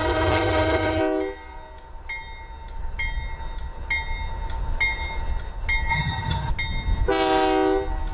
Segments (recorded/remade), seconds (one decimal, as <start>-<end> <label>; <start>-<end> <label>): 0.0-1.0 remade; 1.0-5.9 recorded; 5.9-6.5 remade; 6.5-8.1 recorded